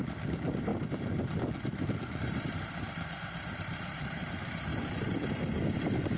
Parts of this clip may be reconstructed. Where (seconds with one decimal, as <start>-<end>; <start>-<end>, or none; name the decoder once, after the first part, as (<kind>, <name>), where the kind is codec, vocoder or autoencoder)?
0.7-4.2 (vocoder, BigVGAN v2); 4.7-5.4